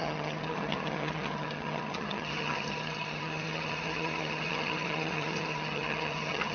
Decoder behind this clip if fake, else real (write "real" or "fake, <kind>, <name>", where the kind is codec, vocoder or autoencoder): fake, vocoder, HiFi-GAN